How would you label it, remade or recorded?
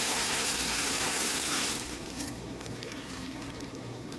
remade